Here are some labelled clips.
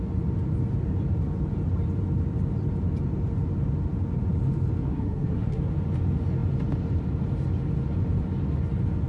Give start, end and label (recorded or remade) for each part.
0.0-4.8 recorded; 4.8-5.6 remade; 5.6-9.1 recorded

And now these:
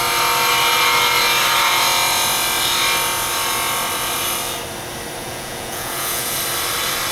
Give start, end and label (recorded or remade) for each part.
0.0-5.2 recorded; 5.2-6.4 remade; 6.4-7.1 recorded

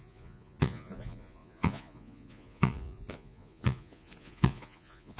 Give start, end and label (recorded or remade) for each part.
0.0-5.2 remade

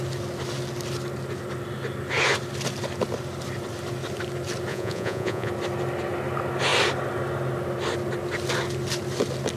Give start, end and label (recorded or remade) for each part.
0.0-4.7 recorded; 4.7-5.5 remade; 5.5-9.6 recorded

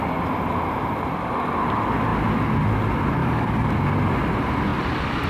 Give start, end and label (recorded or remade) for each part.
0.0-3.2 recorded; 3.2-3.7 remade; 3.7-5.3 recorded

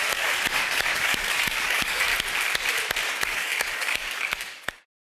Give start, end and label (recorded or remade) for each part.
0.0-2.1 remade; 2.1-3.1 recorded; 3.1-5.0 remade

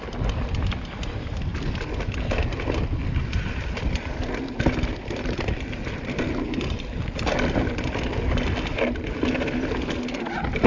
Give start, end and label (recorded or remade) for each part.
0.0-10.7 recorded